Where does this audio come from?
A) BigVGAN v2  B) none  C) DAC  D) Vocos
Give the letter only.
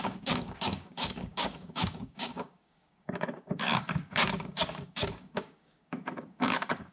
C